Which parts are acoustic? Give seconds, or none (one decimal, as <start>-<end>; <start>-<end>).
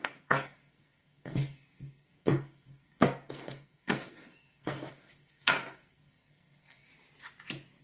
6.9-7.8